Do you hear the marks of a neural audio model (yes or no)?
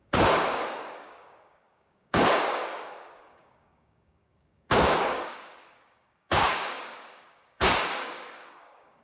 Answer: yes